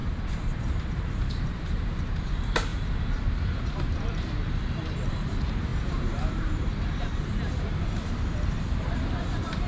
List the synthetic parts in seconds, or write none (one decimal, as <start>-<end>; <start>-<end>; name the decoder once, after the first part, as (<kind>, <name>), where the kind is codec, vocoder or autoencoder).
0.0-9.7 (vocoder, BigVGAN v2)